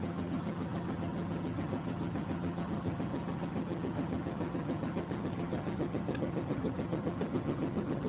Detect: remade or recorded remade